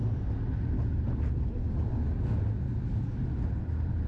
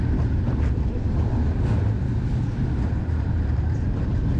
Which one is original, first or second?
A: first